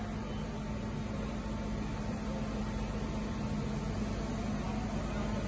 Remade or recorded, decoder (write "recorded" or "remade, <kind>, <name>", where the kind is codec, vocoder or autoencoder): recorded